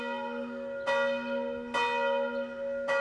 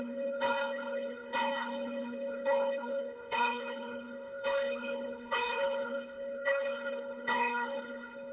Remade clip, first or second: second